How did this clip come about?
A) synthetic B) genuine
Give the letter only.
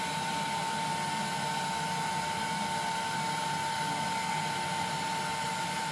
B